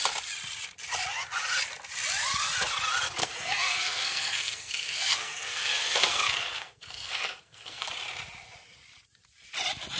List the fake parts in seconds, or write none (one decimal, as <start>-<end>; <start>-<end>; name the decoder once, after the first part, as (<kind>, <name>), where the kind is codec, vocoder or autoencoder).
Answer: 3.2-7.9 (codec, SNAC)